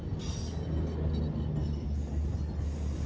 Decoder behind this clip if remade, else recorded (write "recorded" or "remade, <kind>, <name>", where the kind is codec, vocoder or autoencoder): recorded